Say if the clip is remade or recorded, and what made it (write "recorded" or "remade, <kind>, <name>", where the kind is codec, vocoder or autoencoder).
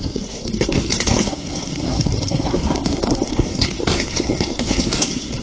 remade, codec, SNAC